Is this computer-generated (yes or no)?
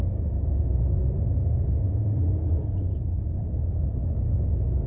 no